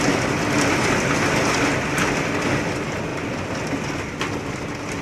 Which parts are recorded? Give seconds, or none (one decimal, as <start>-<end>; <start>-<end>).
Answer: 0.0-5.0